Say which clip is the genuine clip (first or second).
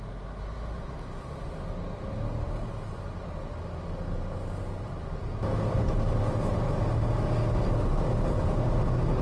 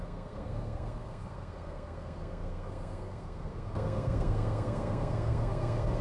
first